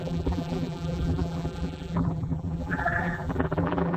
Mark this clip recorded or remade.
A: remade